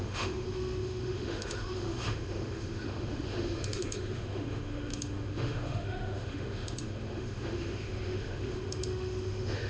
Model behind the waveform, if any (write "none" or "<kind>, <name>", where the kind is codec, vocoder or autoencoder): autoencoder, DAC-VAE